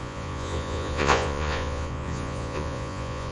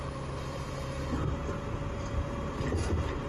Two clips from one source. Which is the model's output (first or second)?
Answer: first